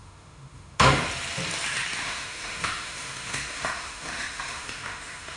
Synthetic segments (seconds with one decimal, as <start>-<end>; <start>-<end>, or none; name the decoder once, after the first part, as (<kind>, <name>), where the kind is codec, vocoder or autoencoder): 0.0-1.0 (autoencoder, DAC-VAE); 2.0-5.4